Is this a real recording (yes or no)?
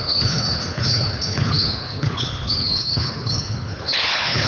no